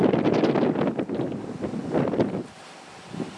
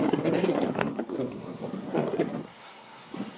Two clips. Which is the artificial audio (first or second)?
second